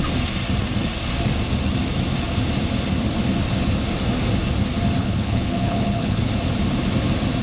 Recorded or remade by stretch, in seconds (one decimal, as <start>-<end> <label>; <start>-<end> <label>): 0.0-5.0 recorded; 5.0-6.3 remade; 6.3-7.4 recorded